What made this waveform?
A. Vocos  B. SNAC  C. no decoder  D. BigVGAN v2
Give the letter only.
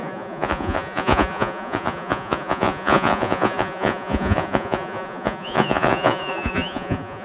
A